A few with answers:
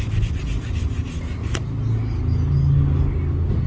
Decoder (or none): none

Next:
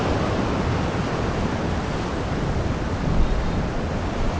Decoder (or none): none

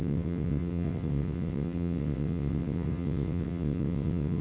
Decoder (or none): vocoder, WaveNeXt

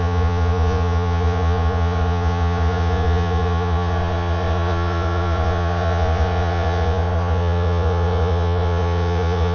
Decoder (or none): vocoder, Vocos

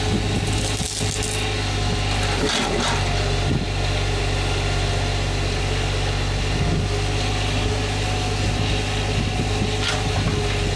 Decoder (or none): none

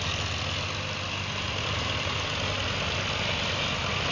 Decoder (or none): none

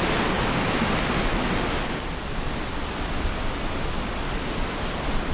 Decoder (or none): none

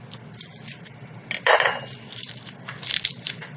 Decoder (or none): none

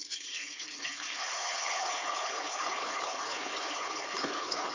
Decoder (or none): codec, HILCodec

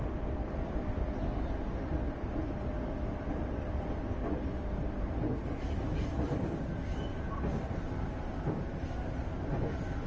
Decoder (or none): none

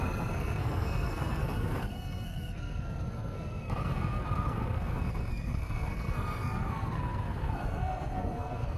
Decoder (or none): codec, SNAC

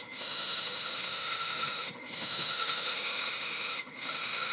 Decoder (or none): autoencoder, DAC-VAE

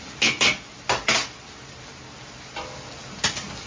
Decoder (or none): none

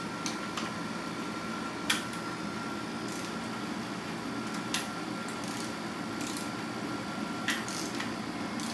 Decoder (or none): none